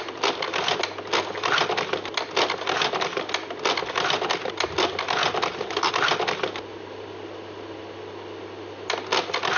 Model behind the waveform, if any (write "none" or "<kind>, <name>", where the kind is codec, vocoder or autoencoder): none